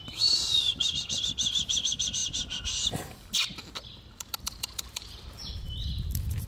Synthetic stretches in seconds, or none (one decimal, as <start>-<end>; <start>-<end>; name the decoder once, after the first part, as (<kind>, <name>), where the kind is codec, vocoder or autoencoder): 0.0-0.7 (vocoder, BigVGAN v2); 1.2-2.2; 4.4-6.5